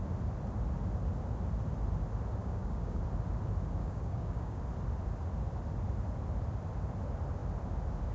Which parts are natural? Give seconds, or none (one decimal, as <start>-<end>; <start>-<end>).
0.0-2.4; 3.0-3.8; 4.6-8.1